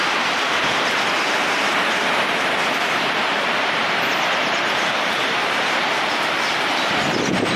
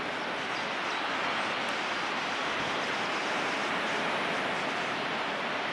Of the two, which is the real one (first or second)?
second